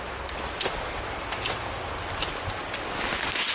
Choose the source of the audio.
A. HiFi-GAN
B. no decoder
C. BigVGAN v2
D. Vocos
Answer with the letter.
B